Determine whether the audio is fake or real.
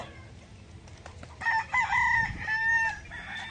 real